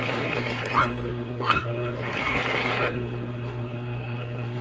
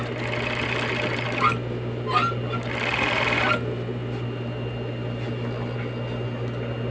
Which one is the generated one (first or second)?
first